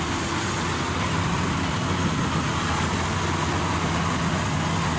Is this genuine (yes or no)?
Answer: yes